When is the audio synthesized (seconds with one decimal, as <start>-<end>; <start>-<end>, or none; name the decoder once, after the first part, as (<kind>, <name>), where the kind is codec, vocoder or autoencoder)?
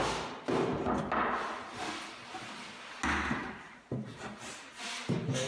3.4-4.8 (vocoder, BigVGAN v2)